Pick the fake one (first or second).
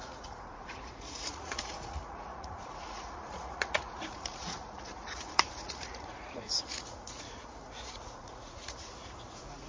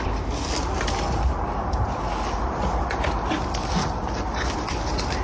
first